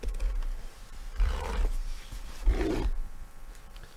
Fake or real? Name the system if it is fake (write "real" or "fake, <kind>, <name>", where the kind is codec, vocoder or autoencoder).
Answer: fake, vocoder, BigVGAN v2